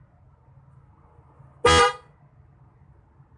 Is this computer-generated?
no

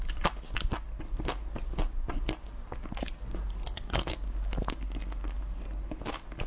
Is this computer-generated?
no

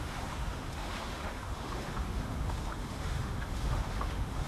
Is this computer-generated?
yes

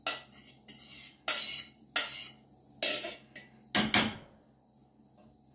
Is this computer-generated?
no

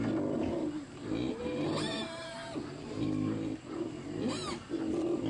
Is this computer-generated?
no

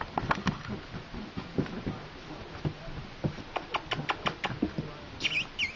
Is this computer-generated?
no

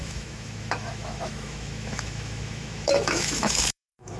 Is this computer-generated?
yes